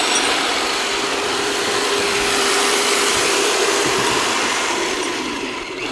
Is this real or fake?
fake